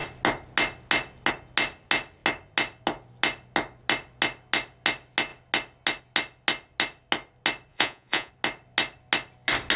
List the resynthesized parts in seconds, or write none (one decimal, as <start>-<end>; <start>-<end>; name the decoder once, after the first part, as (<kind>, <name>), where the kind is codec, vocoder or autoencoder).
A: 7.7-8.3 (vocoder, Vocos)